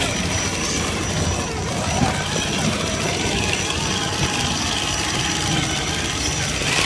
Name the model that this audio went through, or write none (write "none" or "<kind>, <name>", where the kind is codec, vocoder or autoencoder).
none